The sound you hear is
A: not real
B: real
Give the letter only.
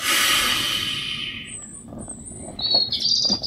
B